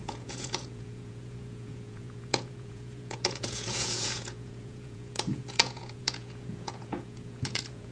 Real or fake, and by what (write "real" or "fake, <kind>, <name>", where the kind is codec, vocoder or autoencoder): fake, vocoder, Vocos